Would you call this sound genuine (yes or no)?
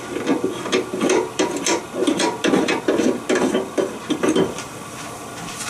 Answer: yes